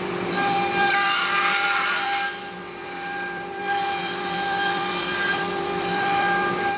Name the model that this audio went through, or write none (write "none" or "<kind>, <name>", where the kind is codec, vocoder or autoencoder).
vocoder, BigVGAN v2